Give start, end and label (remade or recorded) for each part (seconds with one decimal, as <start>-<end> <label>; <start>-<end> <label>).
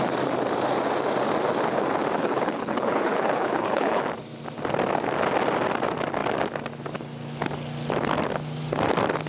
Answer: 0.0-2.2 recorded; 2.2-4.0 remade; 4.0-9.3 recorded